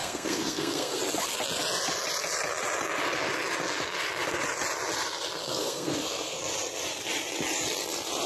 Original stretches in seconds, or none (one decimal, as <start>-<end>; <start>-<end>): 1.0-5.4; 6.4-8.3